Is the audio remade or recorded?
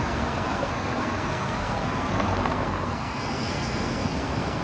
remade